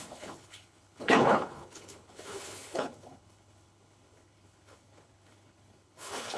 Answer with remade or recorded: remade